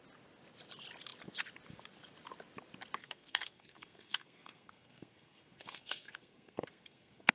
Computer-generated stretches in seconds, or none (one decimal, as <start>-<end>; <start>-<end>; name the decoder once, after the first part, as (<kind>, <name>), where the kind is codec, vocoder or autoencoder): 3.0-7.3 (codec, SNAC)